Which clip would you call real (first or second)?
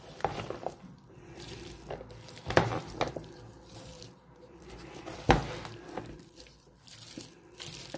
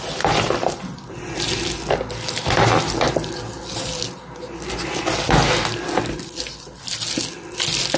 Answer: second